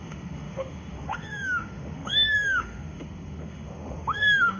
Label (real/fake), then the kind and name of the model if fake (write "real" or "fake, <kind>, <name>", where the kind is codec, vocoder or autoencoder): fake, autoencoder, DAC-VAE